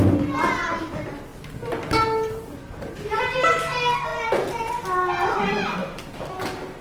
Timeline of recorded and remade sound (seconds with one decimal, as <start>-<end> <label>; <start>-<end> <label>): 0.0-1.3 recorded; 1.3-3.2 remade; 3.2-6.8 recorded